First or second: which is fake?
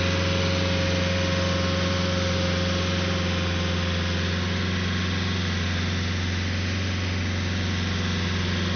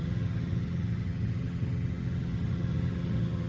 second